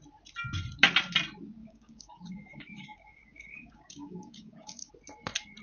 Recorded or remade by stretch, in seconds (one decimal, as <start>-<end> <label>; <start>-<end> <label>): 0.0-1.6 recorded; 1.6-4.9 remade; 4.9-5.6 recorded